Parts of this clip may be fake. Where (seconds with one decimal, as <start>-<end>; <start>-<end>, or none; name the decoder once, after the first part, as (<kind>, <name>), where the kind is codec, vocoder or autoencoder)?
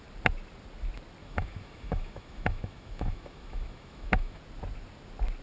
1.2-4.4 (autoencoder, DAC-VAE)